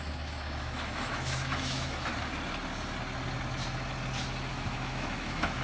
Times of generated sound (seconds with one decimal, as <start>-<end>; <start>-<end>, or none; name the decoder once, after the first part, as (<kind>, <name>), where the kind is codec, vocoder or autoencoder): 0.0-2.1 (autoencoder, DAC-VAE); 4.5-5.6